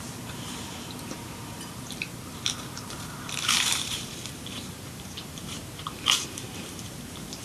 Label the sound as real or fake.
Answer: fake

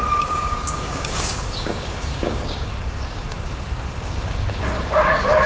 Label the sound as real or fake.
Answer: fake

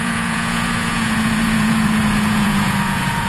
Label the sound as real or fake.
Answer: fake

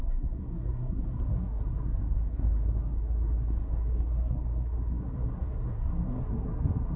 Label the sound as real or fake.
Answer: fake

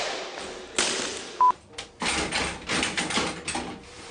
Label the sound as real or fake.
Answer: real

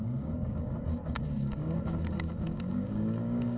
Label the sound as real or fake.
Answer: fake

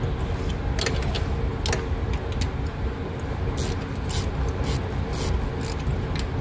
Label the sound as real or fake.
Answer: real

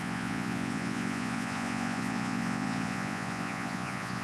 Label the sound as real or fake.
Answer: fake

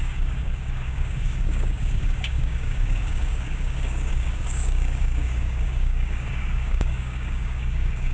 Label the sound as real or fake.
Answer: fake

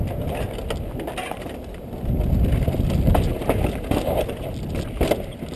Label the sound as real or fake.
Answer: real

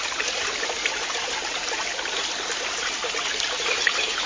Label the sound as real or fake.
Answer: real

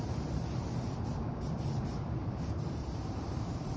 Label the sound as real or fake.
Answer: fake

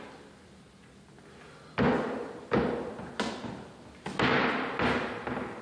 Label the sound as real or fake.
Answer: real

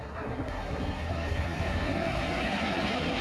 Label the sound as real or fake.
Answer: fake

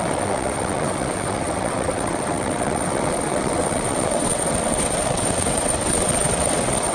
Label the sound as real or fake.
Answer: fake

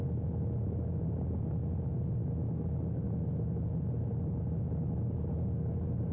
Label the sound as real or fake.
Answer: real